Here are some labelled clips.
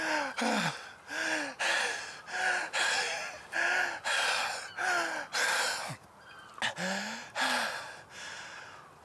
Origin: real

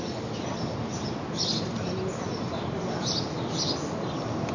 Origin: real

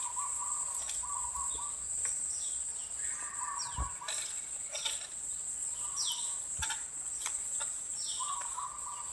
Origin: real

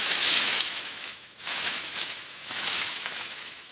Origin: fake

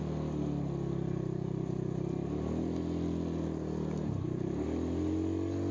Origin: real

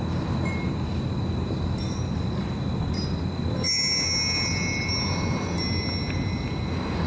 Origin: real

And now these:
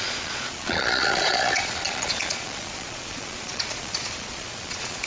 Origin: fake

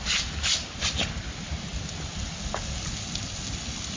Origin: real